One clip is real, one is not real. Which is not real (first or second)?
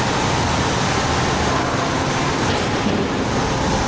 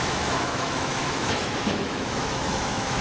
second